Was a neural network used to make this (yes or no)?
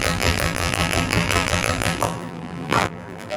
yes